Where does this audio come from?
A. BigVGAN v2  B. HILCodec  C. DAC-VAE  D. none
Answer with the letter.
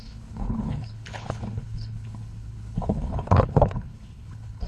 B